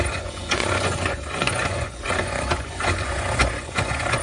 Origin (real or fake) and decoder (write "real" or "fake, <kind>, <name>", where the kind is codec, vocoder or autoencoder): fake, vocoder, Vocos